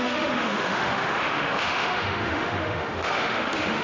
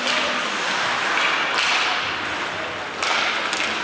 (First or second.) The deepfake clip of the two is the first